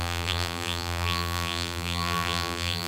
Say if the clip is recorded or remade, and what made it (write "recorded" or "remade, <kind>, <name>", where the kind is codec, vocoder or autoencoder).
remade, vocoder, BigVGAN v2